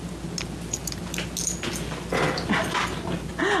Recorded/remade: recorded